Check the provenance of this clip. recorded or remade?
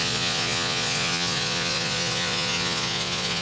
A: remade